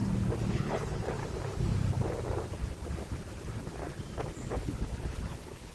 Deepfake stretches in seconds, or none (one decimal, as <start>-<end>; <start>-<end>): 0.5-1.2; 4.5-5.7